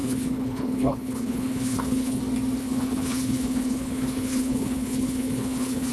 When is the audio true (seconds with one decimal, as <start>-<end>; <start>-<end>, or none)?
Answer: 2.2-2.6

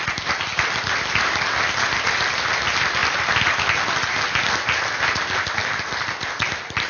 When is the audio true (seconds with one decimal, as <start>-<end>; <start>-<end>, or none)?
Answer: 0.0-0.5; 1.4-3.0; 4.2-6.9

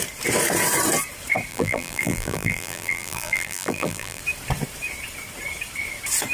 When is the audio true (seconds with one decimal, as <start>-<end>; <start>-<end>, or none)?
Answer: 0.0-1.5; 4.2-6.3

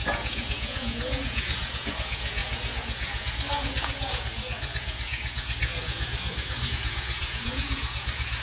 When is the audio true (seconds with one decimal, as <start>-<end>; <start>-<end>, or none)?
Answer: none